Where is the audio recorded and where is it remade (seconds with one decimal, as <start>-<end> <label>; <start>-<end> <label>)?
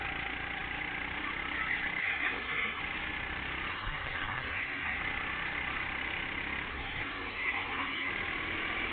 0.0-2.0 recorded; 2.0-2.8 remade; 2.8-3.7 recorded; 3.7-5.0 remade; 5.0-6.7 recorded; 6.7-8.1 remade; 8.1-8.9 recorded